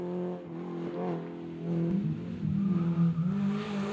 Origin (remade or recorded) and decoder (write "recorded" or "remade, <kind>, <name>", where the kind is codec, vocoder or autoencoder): recorded